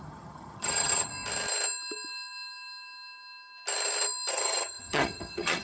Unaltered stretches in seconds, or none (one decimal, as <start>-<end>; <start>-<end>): 1.1-4.3